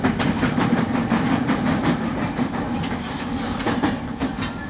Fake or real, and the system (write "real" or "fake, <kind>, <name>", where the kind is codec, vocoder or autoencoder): real